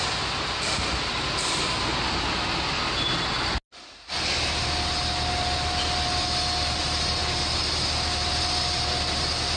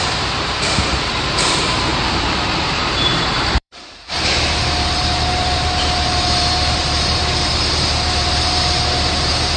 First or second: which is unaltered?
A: first